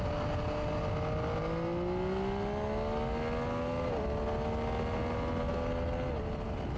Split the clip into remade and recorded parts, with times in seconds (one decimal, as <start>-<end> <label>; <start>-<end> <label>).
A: 0.0-6.8 recorded